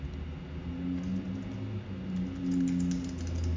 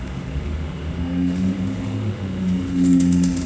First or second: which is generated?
second